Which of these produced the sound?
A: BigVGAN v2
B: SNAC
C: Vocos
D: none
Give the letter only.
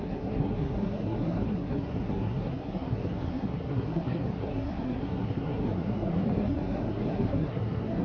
B